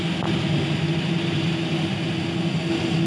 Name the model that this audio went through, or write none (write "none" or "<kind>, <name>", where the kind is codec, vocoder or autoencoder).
none